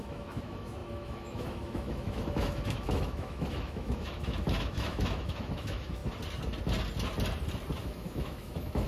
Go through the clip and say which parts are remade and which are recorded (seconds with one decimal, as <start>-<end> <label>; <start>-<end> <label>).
0.0-6.0 remade; 6.0-7.8 recorded; 7.8-8.9 remade